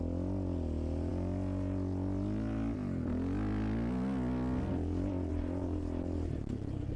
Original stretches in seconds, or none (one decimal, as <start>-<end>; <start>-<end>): 0.0-7.0